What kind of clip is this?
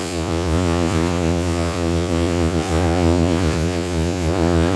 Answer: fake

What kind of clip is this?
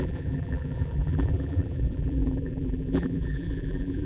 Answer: fake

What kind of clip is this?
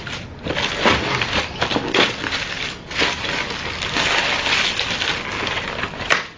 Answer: real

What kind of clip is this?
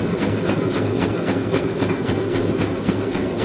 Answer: fake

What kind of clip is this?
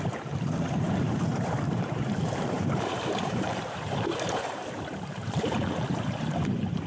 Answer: fake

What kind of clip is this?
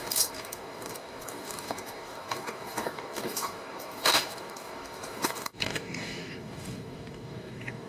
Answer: fake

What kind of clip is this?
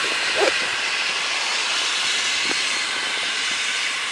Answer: fake